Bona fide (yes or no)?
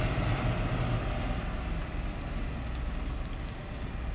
yes